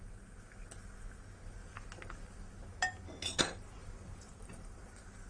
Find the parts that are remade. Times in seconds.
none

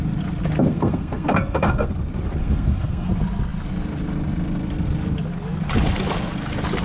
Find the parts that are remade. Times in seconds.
0.7-1.9 (codec, SNAC); 2.4-3.1

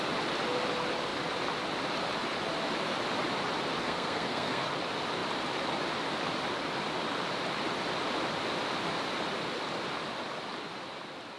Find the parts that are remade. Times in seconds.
3.8-4.7 (codec, SNAC)

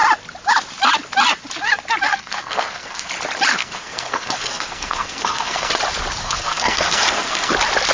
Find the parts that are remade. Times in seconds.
2.1-3.1 (codec, SNAC); 3.5-5.7; 6.2-7.5

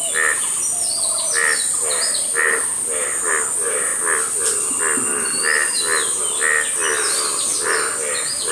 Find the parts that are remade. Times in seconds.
none

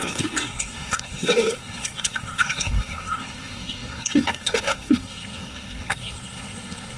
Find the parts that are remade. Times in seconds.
0.0-7.0 (codec, SNAC)

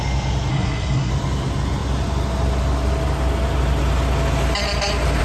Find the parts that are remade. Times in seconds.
0.5-1.1 (codec, SNAC)

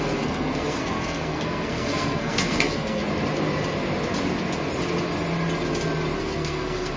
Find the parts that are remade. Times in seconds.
0.0-3.0 (codec, SNAC); 6.2-7.0